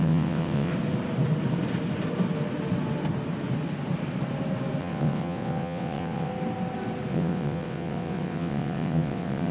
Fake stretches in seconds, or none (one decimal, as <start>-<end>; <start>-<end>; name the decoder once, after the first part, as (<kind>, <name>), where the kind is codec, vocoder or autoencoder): 0.0-0.7 (vocoder, WaveNeXt); 4.8-6.3; 7.1-9.5